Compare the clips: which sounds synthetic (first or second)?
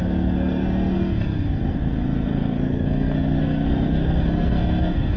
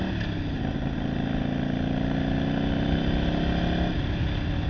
first